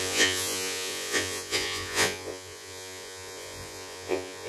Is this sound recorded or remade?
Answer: remade